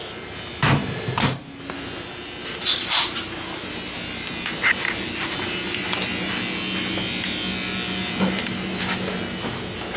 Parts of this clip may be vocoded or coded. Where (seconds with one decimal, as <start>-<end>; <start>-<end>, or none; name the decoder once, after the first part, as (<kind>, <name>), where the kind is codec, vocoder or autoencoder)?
none